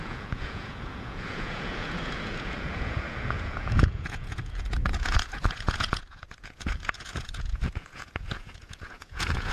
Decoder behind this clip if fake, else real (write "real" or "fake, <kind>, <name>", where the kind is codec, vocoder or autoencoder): fake, vocoder, Vocos